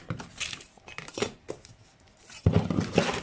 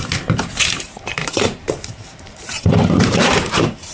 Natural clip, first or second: first